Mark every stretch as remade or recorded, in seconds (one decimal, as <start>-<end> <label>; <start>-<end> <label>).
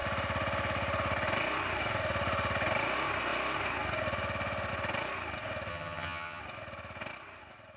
0.0-5.7 recorded; 5.7-6.4 remade; 6.4-7.8 recorded